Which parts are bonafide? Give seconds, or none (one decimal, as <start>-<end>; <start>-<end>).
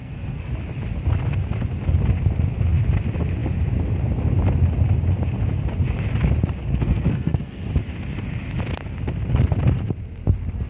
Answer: 0.5-6.7; 7.7-10.7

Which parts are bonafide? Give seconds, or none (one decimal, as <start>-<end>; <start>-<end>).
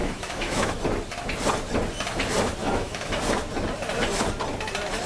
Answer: 0.8-2.6; 3.2-5.1